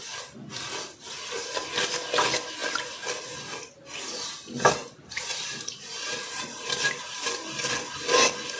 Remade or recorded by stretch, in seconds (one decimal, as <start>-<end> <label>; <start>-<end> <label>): 0.0-4.8 recorded; 4.8-7.3 remade; 7.3-8.6 recorded